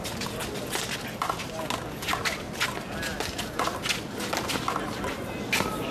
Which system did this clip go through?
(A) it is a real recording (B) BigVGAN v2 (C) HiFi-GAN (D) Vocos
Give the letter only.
A